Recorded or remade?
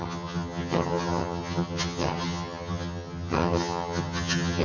remade